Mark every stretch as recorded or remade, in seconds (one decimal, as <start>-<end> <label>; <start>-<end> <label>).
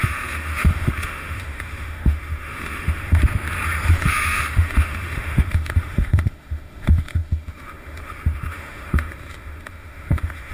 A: 0.0-3.2 remade; 3.2-3.9 recorded; 3.9-10.5 remade